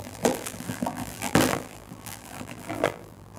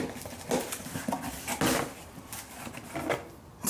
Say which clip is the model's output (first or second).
first